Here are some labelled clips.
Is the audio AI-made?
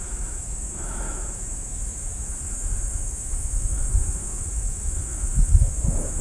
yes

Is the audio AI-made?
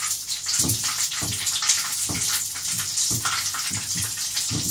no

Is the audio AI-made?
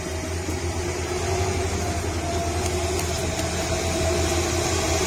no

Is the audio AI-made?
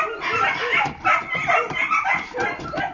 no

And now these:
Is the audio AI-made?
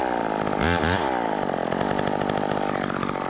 no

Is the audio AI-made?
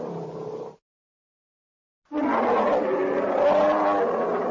no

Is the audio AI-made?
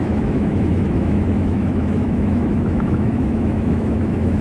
yes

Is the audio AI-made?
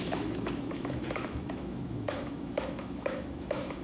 yes